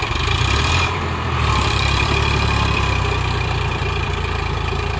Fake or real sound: fake